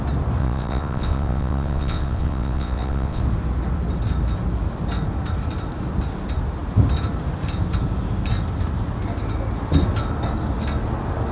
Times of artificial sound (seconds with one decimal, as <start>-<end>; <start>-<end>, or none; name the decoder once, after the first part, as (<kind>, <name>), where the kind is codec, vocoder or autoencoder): 0.4-3.2 (vocoder, WaveNeXt)